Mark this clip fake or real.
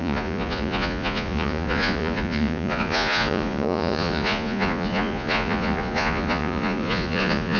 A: fake